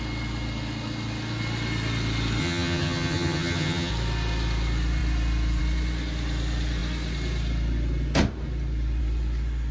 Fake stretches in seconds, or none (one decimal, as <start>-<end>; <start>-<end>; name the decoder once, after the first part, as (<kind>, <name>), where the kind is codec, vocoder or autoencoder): 2.4-3.9 (vocoder, HiFi-GAN)